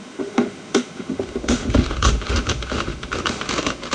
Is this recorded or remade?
remade